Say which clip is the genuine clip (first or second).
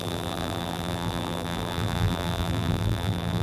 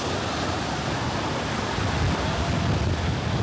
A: second